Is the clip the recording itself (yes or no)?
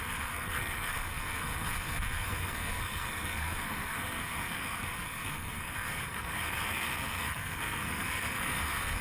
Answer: no